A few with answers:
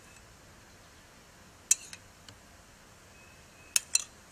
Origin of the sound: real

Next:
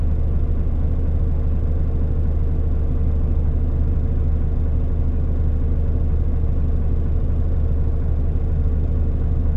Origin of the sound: real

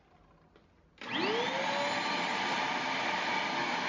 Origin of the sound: real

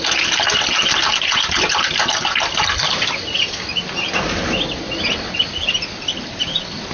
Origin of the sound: real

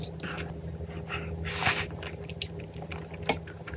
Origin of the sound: real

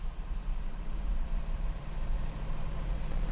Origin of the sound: fake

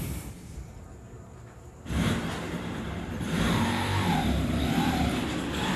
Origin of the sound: fake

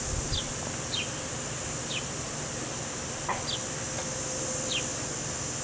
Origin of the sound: real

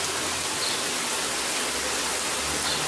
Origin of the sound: real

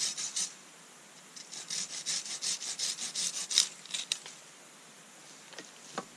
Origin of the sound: real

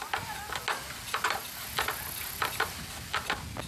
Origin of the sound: real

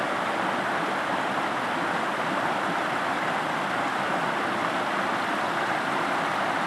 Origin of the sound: fake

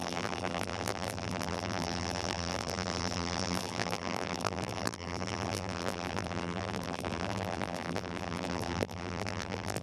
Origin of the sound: fake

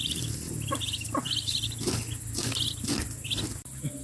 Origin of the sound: real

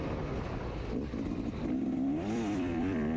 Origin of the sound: fake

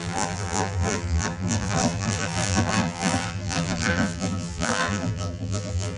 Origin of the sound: fake